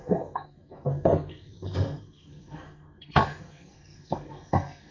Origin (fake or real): fake